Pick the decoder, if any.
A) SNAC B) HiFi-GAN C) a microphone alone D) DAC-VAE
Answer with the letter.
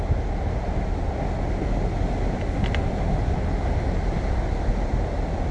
C